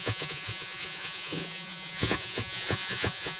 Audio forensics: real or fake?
fake